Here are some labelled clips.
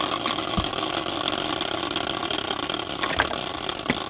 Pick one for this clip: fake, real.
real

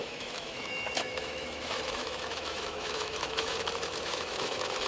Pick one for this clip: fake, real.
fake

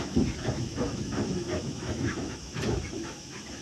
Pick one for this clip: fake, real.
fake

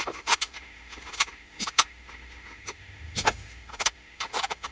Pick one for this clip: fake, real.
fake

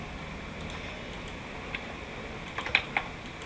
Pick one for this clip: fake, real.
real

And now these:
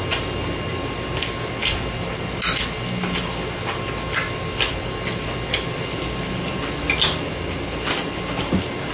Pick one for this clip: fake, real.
real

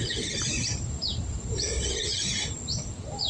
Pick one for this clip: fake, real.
real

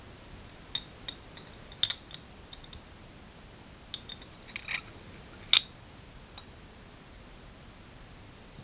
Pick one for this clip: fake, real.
real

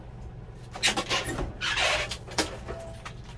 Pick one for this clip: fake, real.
real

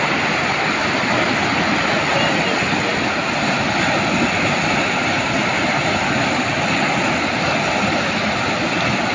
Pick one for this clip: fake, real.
real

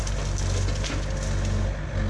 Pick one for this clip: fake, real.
real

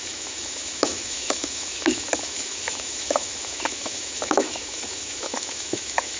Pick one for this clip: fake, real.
fake